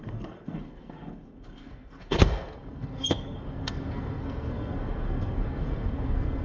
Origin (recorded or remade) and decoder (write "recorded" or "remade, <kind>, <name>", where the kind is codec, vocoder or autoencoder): remade, codec, SNAC